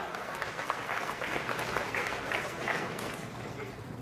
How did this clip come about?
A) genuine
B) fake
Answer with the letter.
B